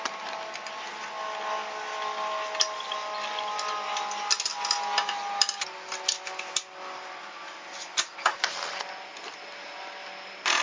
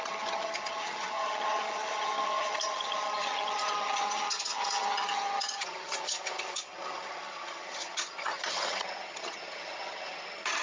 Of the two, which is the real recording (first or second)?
first